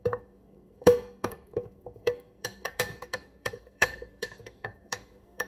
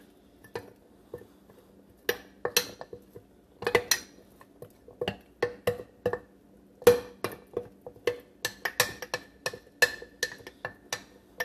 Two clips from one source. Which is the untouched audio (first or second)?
second